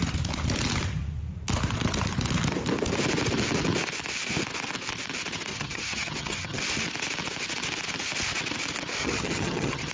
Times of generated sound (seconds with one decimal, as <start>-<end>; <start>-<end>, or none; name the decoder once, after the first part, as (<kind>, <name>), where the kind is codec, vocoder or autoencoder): 5.5-6.6 (vocoder, HiFi-GAN); 9.0-9.9